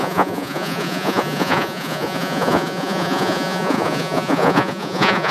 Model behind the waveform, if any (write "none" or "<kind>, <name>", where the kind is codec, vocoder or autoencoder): vocoder, Vocos